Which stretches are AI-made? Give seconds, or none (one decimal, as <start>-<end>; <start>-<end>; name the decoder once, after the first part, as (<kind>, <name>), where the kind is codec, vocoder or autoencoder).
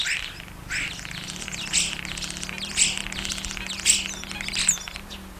none